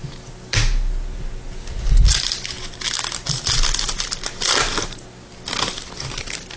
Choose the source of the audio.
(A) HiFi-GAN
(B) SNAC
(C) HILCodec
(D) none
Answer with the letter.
D